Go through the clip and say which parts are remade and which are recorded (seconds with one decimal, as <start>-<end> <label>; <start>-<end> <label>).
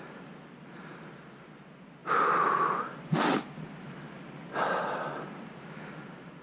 0.0-6.4 recorded